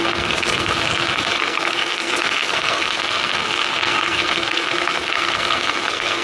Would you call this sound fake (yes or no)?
yes